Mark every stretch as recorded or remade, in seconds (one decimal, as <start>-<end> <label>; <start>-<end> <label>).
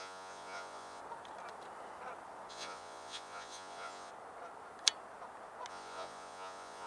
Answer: 0.0-1.0 remade; 1.0-2.5 recorded; 2.5-4.1 remade; 4.1-5.7 recorded; 5.7-6.9 remade